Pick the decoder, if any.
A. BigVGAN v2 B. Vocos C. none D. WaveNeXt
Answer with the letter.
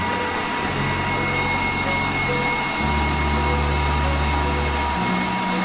C